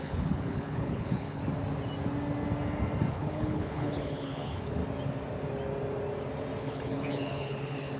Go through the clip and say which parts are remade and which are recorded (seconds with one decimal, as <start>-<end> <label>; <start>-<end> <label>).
0.0-1.4 remade; 1.4-3.1 recorded; 3.1-4.8 remade; 4.8-6.6 recorded; 6.6-8.0 remade